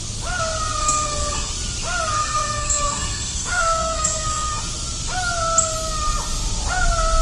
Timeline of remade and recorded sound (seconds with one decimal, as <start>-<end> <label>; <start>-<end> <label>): 0.0-0.8 recorded; 0.8-1.5 remade; 1.5-2.2 recorded; 2.2-4.6 remade; 4.6-7.2 recorded

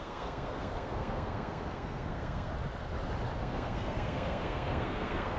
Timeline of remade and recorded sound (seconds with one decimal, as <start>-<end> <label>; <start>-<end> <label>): 0.0-2.5 remade; 2.5-3.4 recorded; 3.4-5.4 remade

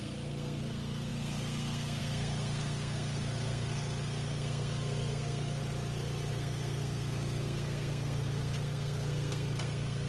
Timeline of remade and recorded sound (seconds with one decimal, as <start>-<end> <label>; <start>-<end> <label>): 0.0-5.6 remade; 5.6-6.3 recorded; 6.3-10.1 remade

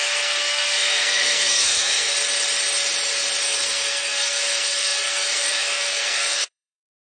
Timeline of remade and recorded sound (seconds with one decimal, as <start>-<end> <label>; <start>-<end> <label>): 0.0-2.1 remade; 2.1-3.4 recorded; 3.4-7.2 remade

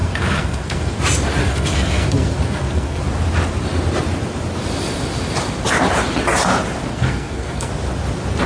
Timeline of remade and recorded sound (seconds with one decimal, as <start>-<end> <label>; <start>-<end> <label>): 0.0-1.0 remade; 1.0-1.4 recorded; 1.4-3.0 remade; 3.0-6.9 recorded; 6.9-7.7 remade; 7.7-8.5 recorded

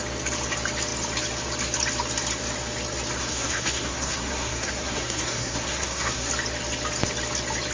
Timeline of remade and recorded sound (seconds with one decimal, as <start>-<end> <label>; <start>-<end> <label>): 0.0-3.2 recorded; 3.2-6.3 remade; 6.3-7.7 recorded

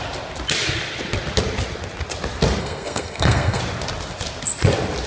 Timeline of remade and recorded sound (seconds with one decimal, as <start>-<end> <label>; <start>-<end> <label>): 0.0-2.6 recorded; 2.6-3.6 remade; 3.6-5.1 recorded

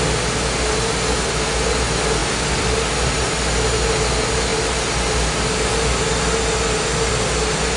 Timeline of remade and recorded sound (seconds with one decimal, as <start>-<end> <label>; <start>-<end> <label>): 0.0-7.8 recorded